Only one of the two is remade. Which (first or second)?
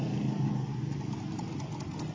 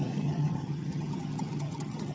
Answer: second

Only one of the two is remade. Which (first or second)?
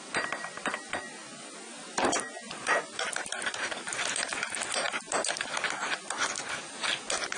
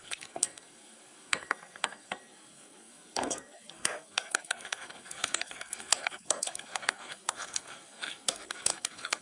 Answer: second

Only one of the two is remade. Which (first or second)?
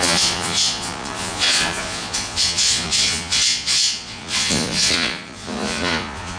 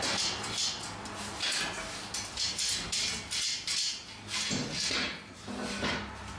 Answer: first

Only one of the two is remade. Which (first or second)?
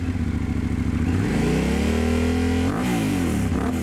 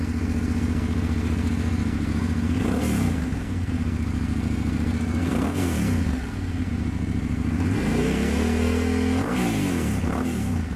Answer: second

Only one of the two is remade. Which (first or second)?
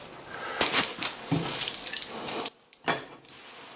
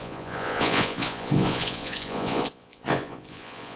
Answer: second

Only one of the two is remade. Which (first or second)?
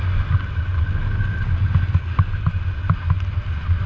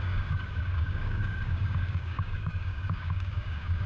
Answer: second